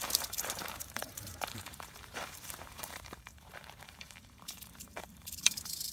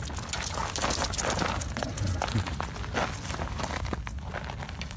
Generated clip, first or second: first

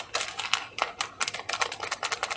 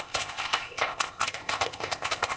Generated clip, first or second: second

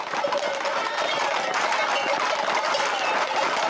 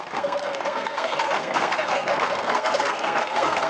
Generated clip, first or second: second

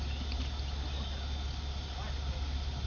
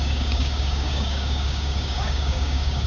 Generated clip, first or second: second